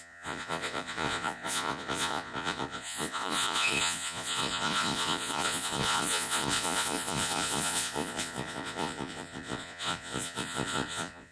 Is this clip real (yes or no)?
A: no